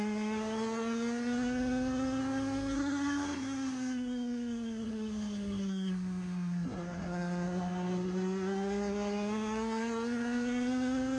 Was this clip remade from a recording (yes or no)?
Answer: yes